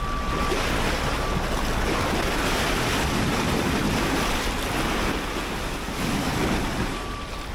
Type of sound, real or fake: real